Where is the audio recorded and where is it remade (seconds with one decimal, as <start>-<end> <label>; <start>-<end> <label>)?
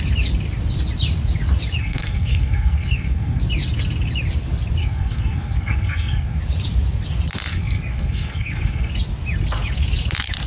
0.0-1.8 recorded; 1.8-3.4 remade; 3.4-4.8 recorded; 4.8-6.4 remade; 6.4-7.5 recorded; 7.5-8.9 remade; 8.9-10.5 recorded